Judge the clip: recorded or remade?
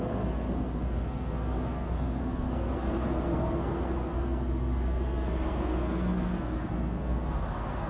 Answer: remade